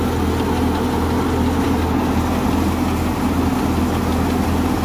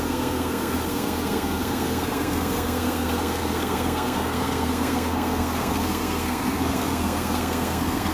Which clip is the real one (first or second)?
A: first